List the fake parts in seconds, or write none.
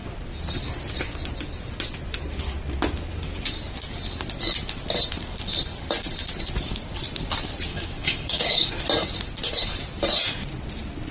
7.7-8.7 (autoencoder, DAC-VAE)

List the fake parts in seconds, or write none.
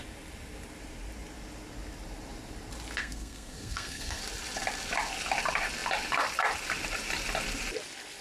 3.0-4.2 (codec, SNAC)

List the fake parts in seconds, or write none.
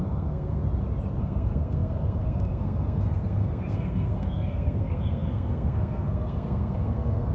0.0-0.6 (codec, SNAC); 1.2-7.3